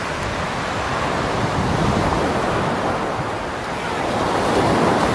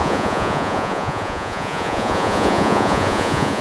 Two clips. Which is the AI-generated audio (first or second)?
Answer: second